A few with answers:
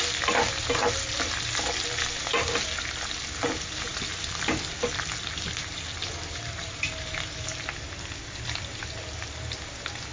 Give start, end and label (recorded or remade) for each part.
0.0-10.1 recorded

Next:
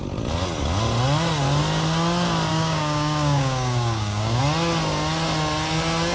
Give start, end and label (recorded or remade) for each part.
0.0-2.5 recorded; 2.5-4.4 remade; 4.4-6.1 recorded

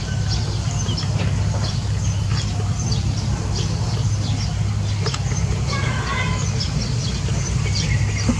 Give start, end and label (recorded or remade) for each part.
0.0-2.3 recorded; 2.3-3.5 remade; 3.5-8.4 recorded

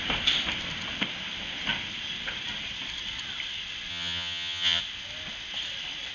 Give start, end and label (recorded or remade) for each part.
0.0-3.9 recorded; 3.9-4.8 remade; 4.8-6.1 recorded

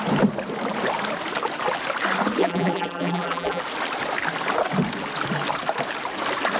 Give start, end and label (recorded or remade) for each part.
0.0-2.4 recorded; 2.4-3.6 remade; 3.6-6.6 recorded

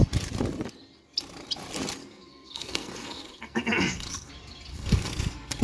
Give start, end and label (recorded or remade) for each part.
0.0-2.0 recorded; 2.0-4.3 remade; 4.3-4.7 recorded; 4.7-5.6 remade